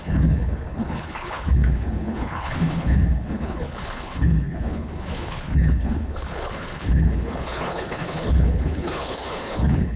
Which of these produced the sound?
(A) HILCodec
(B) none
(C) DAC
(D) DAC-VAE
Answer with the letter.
A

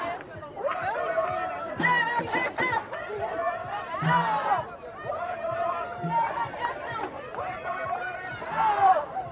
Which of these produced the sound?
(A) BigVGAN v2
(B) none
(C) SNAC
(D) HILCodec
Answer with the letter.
A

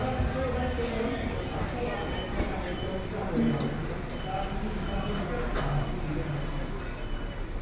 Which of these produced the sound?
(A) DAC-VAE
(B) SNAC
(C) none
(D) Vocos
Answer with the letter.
C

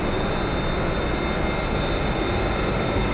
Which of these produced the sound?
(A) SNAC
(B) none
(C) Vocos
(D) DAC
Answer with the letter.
B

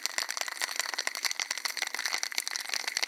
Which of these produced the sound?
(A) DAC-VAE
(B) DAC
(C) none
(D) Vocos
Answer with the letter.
C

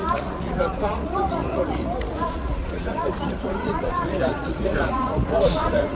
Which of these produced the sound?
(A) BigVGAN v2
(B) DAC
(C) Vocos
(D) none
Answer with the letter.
C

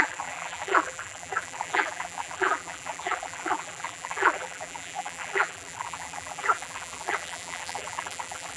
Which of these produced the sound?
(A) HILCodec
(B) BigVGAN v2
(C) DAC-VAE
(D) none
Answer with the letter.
B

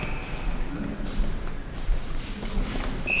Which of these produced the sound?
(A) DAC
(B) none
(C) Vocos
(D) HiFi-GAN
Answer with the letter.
B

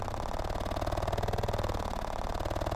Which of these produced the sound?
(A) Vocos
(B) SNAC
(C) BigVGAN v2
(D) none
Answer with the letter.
D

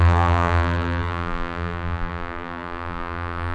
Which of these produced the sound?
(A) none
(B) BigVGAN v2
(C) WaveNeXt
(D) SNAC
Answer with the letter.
B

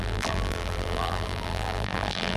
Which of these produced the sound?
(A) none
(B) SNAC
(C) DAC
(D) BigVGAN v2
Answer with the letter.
D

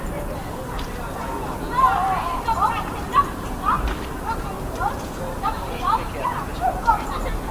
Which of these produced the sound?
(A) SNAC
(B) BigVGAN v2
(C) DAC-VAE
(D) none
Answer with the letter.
D